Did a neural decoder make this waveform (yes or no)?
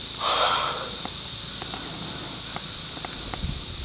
no